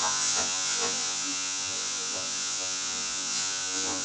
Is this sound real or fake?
fake